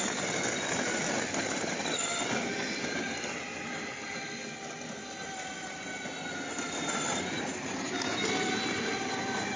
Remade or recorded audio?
recorded